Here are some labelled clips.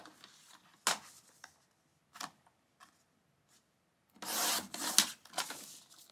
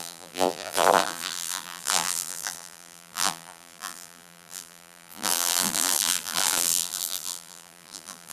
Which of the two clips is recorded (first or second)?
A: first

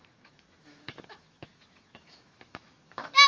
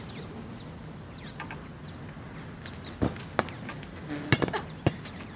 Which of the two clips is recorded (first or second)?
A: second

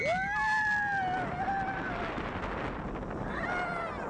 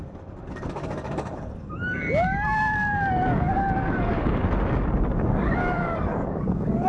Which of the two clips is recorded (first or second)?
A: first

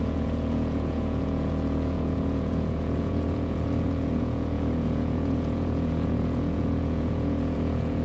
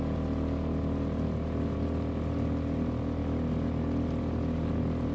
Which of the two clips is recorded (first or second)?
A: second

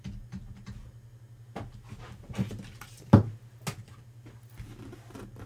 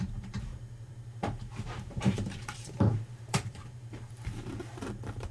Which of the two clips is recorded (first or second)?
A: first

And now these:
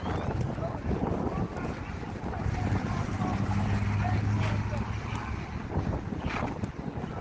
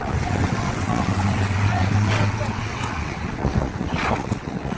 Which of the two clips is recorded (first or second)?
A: first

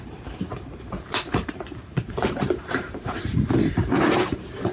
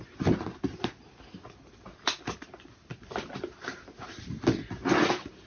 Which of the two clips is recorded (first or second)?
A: second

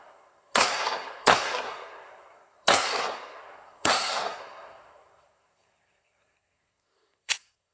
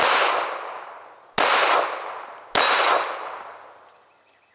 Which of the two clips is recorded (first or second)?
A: second